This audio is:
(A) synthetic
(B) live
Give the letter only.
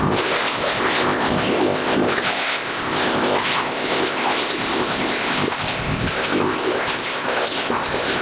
A